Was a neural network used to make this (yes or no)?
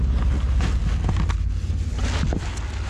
no